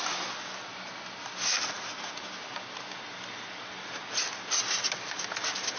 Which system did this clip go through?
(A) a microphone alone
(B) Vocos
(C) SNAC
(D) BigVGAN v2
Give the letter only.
A